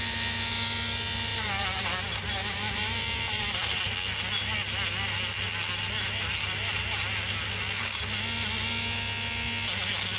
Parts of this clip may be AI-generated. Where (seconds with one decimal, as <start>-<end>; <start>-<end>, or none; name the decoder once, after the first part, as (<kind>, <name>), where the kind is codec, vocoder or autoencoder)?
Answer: 1.3-3.9 (vocoder, BigVGAN v2)